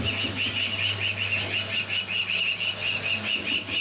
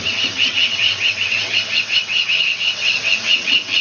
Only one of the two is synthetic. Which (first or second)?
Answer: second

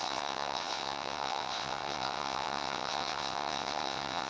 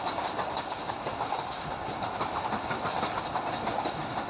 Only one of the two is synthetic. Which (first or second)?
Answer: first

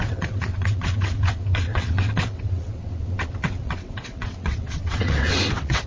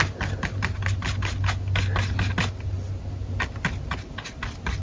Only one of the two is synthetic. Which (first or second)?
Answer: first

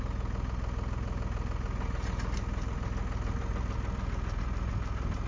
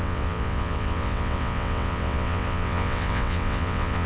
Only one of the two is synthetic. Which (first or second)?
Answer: second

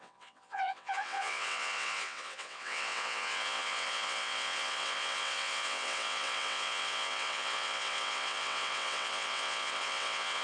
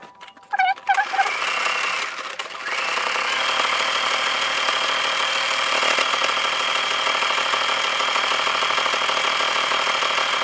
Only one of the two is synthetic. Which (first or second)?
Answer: first